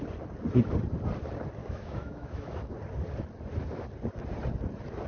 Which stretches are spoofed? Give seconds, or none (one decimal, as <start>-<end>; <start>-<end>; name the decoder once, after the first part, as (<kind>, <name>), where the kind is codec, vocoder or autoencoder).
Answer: 1.6-2.7 (autoencoder, DAC-VAE)